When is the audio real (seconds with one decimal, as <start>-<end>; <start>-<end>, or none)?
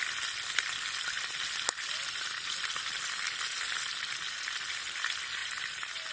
0.0-5.4